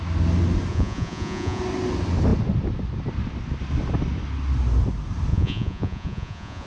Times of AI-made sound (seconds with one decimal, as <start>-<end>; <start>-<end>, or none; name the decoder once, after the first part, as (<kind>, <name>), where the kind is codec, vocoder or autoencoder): 0.7-1.6 (vocoder, Vocos); 5.3-6.7

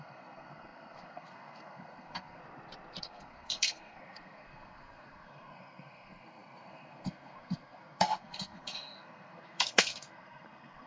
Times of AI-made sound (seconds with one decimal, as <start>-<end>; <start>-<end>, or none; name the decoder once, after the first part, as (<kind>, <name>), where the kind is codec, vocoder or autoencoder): 0.0-2.4 (codec, SNAC); 3.0-10.9

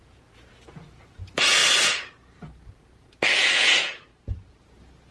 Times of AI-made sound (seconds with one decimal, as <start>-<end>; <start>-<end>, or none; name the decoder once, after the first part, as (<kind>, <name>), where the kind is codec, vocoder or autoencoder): 0.0-1.6 (vocoder, Vocos); 3.5-4.1

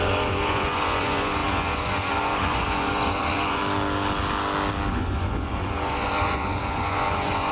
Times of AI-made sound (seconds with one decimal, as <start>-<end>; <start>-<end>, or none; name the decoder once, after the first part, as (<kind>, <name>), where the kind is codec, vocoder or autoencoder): 0.0-3.6 (vocoder, Vocos); 4.9-7.5

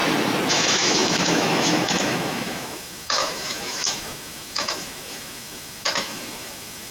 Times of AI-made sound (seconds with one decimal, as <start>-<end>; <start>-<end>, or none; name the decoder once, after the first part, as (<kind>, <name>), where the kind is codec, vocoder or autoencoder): 0.5-6.9 (autoencoder, DAC-VAE)

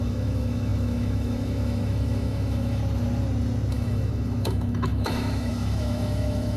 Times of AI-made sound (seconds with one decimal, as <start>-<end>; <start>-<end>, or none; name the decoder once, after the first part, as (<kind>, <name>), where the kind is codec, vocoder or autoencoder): 0.0-2.8 (autoencoder, DAC-VAE); 3.7-6.6